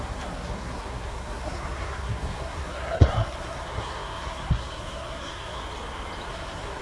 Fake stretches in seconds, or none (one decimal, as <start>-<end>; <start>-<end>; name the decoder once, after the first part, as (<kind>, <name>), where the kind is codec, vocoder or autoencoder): 0.0-5.6 (codec, SNAC); 6.3-6.8